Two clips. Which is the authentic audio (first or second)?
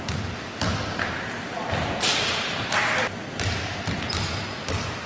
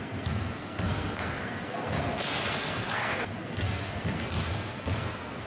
first